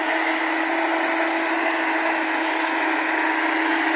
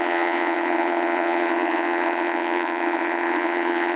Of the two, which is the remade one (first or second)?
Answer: second